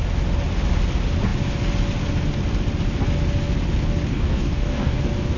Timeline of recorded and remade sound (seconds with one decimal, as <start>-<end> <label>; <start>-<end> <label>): 0.0-4.1 recorded; 4.1-5.0 remade; 5.0-5.4 recorded